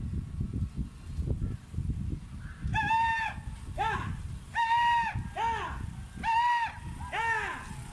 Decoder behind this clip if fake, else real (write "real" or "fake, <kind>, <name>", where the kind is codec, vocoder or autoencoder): real